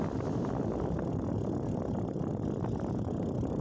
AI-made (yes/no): no